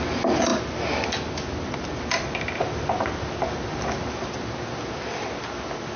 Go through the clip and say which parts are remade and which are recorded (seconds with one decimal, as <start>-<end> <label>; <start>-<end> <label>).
0.0-6.0 recorded